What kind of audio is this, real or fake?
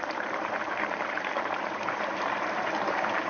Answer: fake